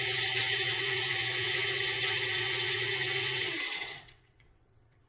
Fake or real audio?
fake